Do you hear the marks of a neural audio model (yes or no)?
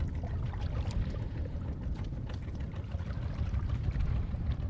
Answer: no